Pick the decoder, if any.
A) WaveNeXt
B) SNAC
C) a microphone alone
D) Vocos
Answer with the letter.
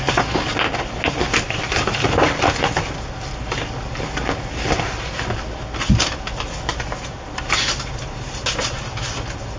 C